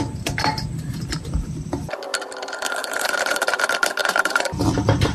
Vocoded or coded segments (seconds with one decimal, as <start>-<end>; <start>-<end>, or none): 2.8-3.6; 4.0-5.1